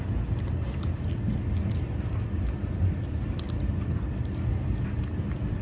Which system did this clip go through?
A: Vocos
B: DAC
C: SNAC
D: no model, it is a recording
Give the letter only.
D